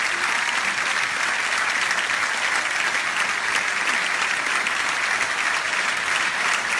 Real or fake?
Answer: real